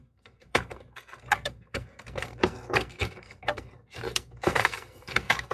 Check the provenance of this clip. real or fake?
fake